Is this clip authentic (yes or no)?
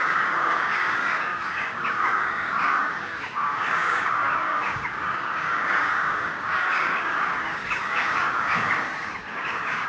no